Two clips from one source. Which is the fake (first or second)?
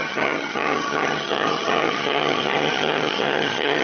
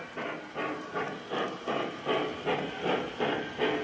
first